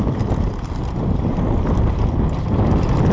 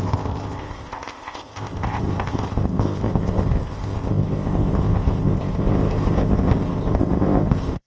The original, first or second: first